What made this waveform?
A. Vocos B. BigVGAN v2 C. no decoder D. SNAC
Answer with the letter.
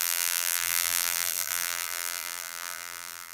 B